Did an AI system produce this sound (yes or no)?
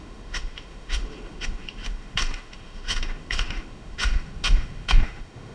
yes